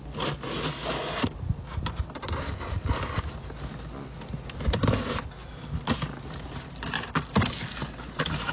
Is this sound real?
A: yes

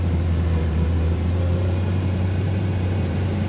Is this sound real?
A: no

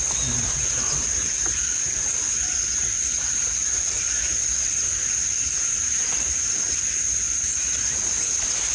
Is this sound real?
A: yes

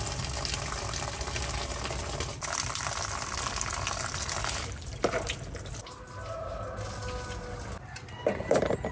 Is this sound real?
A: yes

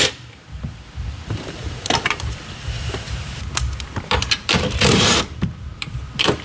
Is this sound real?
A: no